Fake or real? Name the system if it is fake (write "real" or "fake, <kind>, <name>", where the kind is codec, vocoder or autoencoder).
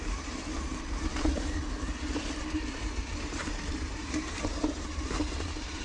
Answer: fake, vocoder, BigVGAN v2